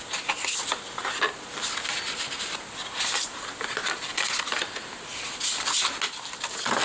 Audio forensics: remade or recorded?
recorded